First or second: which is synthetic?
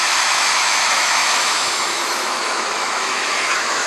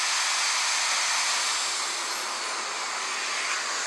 first